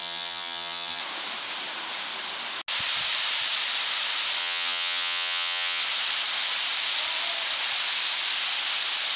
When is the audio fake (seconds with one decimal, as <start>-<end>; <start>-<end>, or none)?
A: 0.0-1.0; 4.4-5.8